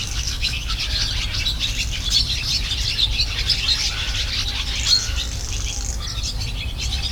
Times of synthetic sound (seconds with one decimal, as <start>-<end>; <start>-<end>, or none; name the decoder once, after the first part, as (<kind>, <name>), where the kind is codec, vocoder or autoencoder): 0.0-0.8 (codec, DAC)